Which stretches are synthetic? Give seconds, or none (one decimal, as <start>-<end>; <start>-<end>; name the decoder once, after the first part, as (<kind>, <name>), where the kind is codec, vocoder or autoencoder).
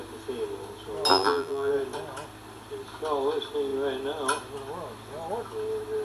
1.1-1.7 (vocoder, BigVGAN v2)